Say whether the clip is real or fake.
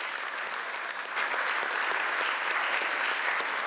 real